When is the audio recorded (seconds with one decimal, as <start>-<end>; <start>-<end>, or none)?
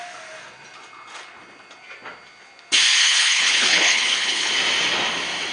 0.0-3.0; 4.5-5.5